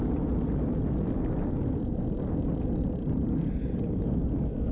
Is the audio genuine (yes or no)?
yes